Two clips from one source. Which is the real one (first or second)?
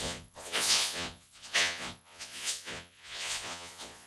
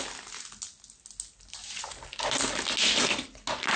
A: second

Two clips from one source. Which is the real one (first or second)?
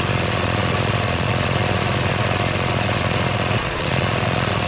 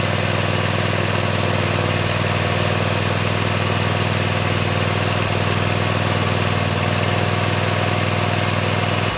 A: second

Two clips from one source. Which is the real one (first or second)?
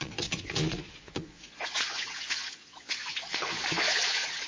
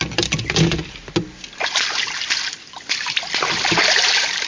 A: second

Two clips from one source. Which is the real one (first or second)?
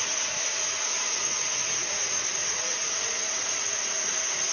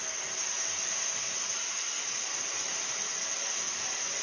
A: second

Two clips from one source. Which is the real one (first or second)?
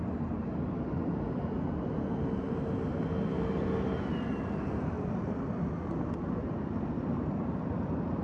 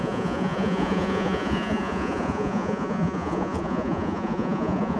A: first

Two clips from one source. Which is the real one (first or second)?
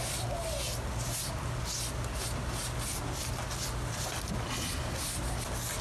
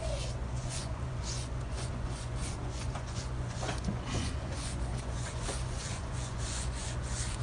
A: first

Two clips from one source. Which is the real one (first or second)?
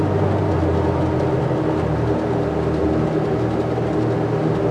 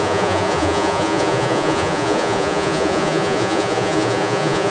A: first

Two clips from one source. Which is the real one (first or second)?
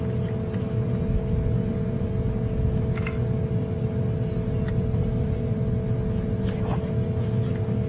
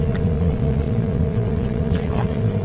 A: first